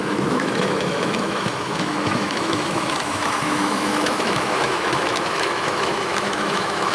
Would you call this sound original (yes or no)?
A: no